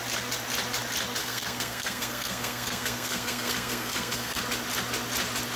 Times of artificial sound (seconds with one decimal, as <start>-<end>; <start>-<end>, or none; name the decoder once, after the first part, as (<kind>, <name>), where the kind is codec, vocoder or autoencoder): 1.2-4.4 (codec, SNAC)